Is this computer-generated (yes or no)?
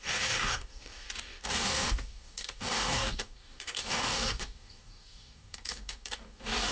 yes